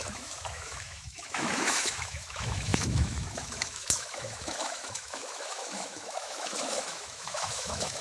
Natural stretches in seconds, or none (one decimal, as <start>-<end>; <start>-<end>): none